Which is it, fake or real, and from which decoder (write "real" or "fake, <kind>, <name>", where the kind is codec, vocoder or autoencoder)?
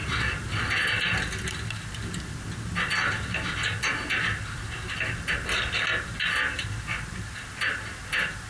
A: real